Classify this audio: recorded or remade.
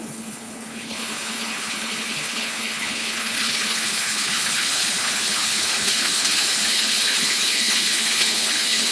remade